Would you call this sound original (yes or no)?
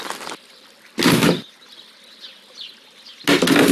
yes